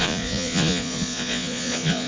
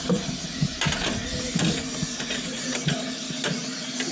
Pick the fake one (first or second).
first